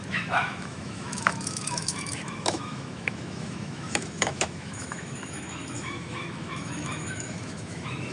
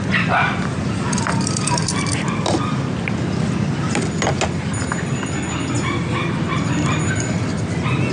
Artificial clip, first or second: first